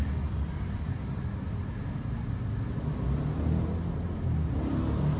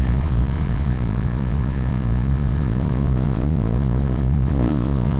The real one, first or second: first